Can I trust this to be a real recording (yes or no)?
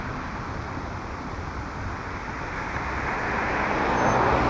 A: no